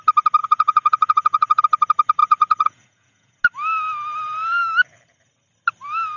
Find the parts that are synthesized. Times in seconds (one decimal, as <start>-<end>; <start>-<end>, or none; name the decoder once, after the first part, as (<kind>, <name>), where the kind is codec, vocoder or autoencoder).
0.4-1.6 (vocoder, Vocos); 2.2-3.3